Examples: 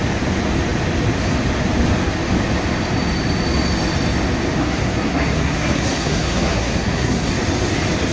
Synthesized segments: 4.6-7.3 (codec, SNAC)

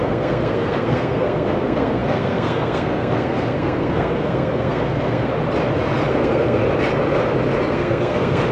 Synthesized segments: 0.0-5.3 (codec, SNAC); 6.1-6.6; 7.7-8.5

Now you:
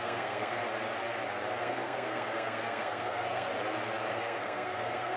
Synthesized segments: 0.0-0.6 (codec, SNAC); 1.6-3.5; 4.1-5.2

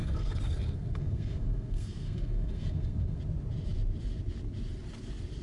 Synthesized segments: 0.0-3.2 (codec, SNAC)

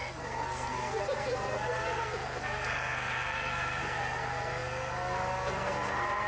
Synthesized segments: 0.0-6.3 (codec, SNAC)